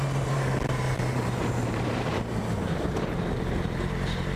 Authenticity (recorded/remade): remade